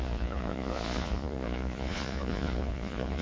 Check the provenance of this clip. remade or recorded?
remade